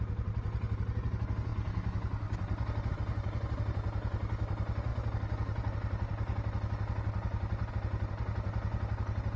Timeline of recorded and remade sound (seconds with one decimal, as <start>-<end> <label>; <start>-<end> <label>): 0.0-9.4 recorded